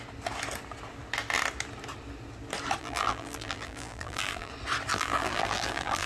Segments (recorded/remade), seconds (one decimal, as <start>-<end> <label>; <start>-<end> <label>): 0.0-2.8 recorded; 2.8-4.5 remade; 4.5-4.9 recorded; 4.9-6.1 remade